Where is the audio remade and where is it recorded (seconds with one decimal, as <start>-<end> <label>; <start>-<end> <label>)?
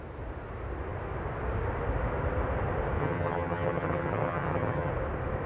0.0-3.0 recorded; 3.0-4.9 remade; 4.9-5.5 recorded